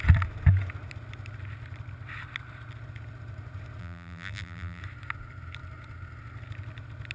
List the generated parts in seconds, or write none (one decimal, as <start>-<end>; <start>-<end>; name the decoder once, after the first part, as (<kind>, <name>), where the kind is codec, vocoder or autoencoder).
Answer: 3.8-4.8 (vocoder, BigVGAN v2)